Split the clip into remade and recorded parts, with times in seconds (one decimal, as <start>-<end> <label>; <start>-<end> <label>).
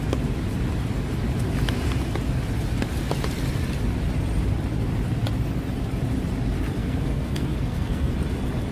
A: 0.0-6.8 recorded; 6.8-8.1 remade; 8.1-8.7 recorded